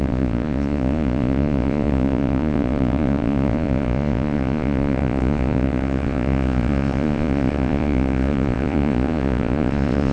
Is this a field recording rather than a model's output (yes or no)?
no